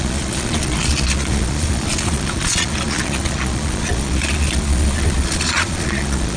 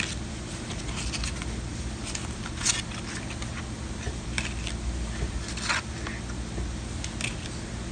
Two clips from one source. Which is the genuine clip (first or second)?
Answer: second